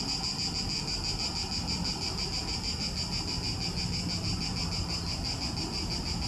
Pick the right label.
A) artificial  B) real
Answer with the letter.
B